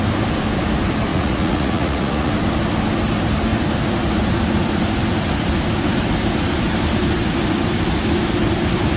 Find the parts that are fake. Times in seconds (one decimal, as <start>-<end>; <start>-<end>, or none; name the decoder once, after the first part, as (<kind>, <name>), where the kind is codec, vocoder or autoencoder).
1.1-2.3 (vocoder, Vocos)